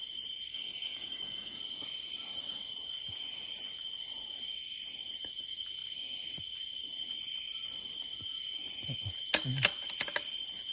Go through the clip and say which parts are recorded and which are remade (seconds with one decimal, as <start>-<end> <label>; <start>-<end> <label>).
0.0-0.5 recorded; 0.5-1.6 remade; 1.6-10.7 recorded